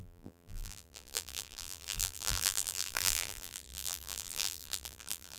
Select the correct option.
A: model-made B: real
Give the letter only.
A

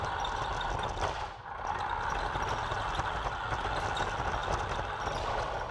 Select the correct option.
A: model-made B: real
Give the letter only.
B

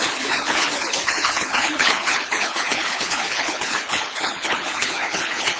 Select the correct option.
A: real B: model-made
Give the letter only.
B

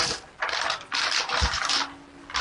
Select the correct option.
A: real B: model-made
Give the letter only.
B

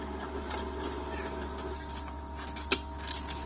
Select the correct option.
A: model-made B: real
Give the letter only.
B